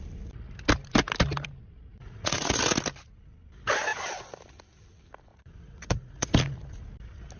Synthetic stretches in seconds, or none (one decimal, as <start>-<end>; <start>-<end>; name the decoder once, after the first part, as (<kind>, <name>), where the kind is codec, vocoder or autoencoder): 1.9-2.6 (vocoder, Vocos); 5.3-6.3